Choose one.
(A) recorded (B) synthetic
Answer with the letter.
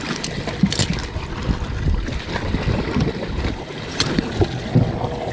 A